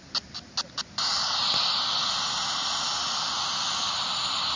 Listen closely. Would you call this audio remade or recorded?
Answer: recorded